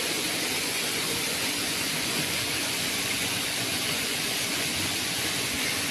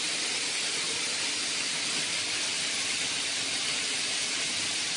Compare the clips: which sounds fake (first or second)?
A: first